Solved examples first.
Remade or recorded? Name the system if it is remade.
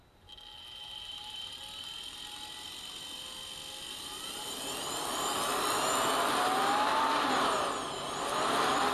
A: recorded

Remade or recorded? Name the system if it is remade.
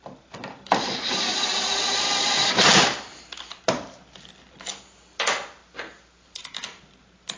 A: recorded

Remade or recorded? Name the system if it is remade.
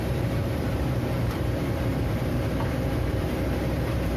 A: remade, vocoder, BigVGAN v2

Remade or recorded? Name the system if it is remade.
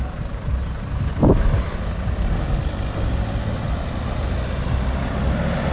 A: recorded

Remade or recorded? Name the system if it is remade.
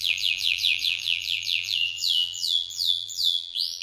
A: remade, vocoder, BigVGAN v2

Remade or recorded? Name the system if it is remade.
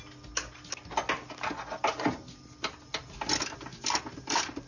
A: recorded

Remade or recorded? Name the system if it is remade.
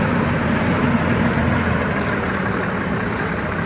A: remade, vocoder, BigVGAN v2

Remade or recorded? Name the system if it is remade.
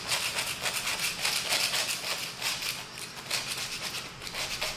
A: recorded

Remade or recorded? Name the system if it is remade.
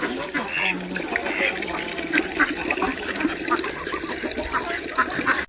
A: recorded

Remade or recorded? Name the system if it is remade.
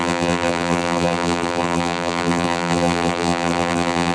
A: remade, vocoder, BigVGAN v2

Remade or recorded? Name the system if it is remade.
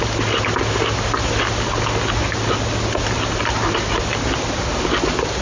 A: recorded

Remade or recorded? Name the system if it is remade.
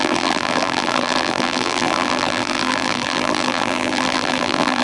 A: remade, vocoder, BigVGAN v2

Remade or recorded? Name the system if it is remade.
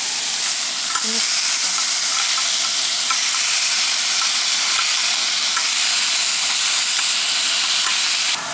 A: recorded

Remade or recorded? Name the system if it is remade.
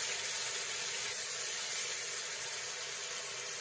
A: remade, vocoder, BigVGAN v2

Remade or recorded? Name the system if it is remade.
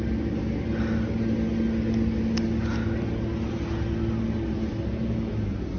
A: recorded